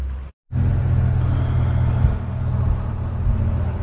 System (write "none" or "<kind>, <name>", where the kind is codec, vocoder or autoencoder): none